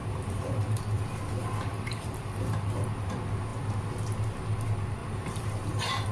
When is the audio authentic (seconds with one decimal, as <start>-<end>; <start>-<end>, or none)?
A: 0.8-1.7; 2.8-5.0; 5.5-6.1